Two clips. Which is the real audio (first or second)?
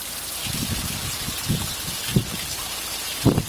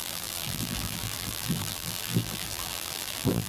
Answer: first